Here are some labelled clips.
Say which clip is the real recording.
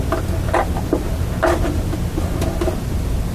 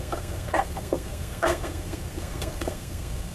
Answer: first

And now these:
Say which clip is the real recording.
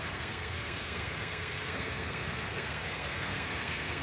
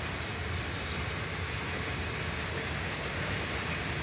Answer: second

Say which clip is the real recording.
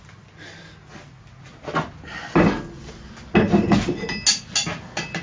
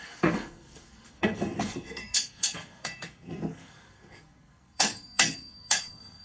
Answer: first